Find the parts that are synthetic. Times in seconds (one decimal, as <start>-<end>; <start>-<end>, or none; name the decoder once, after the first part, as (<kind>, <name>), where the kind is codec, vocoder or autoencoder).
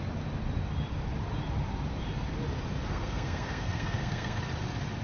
2.9-4.4 (codec, SNAC)